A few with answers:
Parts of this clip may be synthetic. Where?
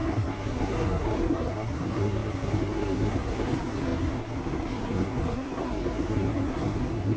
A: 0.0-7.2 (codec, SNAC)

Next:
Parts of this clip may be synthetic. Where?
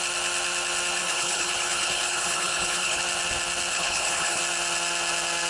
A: 1.0-3.0 (codec, HILCodec); 3.7-4.4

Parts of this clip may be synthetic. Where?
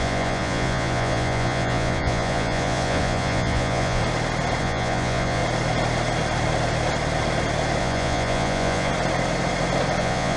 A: 0.0-4.0 (vocoder, Vocos); 4.6-5.4; 7.8-8.9; 10.0-10.4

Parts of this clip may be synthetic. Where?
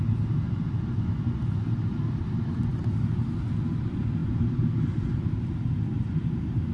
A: none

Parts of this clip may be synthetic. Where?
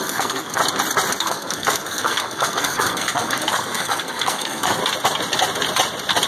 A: 0.0-0.6 (codec, SNAC); 1.2-4.8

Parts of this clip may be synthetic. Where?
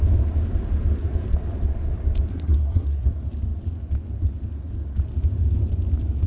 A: 2.3-3.1 (codec, SNAC)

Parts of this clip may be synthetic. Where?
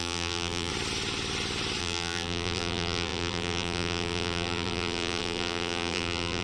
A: 0.0-0.7 (vocoder, BigVGAN v2); 1.8-6.4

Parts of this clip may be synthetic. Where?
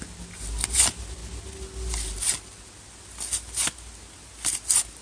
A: none